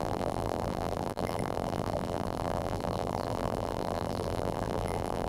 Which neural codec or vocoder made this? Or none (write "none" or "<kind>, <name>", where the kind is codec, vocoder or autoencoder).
vocoder, BigVGAN v2